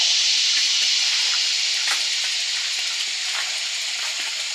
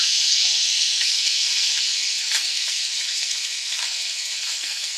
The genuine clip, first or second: first